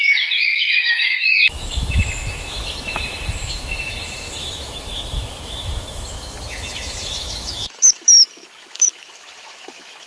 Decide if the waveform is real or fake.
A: fake